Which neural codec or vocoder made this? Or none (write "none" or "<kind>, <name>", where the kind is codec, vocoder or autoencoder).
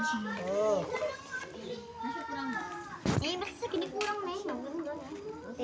none